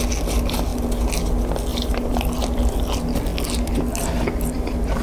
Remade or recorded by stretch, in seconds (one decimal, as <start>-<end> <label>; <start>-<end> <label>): 0.0-1.7 recorded; 1.7-2.6 remade; 2.6-5.0 recorded

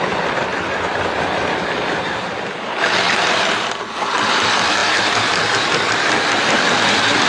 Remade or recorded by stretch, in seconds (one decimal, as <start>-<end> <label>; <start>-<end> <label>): 0.0-7.3 recorded

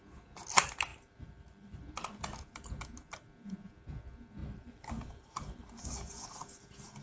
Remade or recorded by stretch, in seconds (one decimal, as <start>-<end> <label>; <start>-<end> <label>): 0.0-0.9 recorded; 0.9-1.8 remade; 1.8-4.4 recorded; 4.4-5.8 remade; 5.8-7.0 recorded

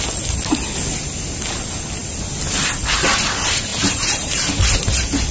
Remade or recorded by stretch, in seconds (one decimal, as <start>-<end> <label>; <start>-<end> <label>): 0.0-3.7 recorded; 3.7-4.5 remade; 4.5-5.3 recorded

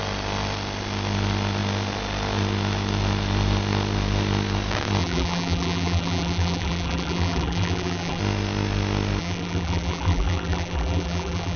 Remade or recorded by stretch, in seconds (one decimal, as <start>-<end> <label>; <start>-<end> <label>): 0.0-5.0 recorded; 5.0-8.2 remade; 8.2-9.2 recorded; 9.2-11.6 remade